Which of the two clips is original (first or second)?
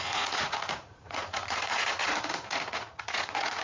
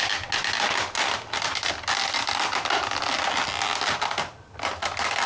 second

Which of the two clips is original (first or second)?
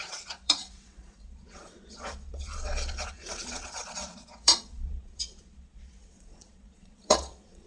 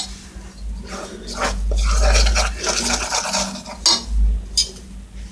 second